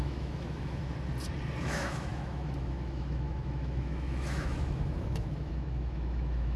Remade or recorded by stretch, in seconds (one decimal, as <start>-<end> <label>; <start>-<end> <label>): 0.0-0.8 remade; 0.8-1.6 recorded; 1.6-6.6 remade